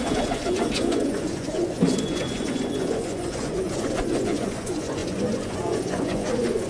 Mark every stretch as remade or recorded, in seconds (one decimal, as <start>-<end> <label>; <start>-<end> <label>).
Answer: 0.0-6.7 remade

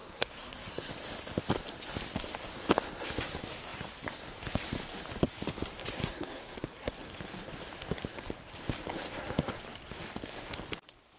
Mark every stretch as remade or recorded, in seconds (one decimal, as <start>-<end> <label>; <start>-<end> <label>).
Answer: 0.0-0.9 remade; 0.9-6.0 recorded; 6.0-7.1 remade; 7.1-11.2 recorded

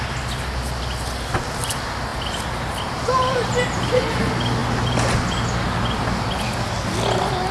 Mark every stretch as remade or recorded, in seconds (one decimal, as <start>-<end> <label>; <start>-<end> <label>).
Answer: 0.0-7.5 recorded

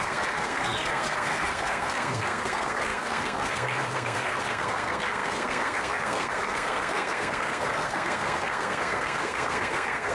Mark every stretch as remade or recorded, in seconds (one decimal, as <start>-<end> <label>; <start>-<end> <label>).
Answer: 0.0-10.1 remade

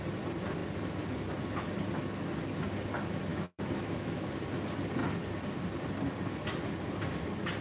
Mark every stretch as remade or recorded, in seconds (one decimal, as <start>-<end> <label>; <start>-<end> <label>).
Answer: 0.0-3.3 recorded; 3.3-4.3 remade; 4.3-7.6 recorded